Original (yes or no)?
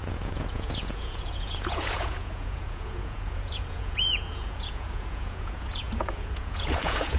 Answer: no